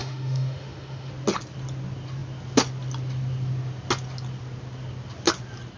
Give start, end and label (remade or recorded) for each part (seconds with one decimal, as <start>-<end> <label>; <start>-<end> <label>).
0.0-1.1 remade; 1.1-5.8 recorded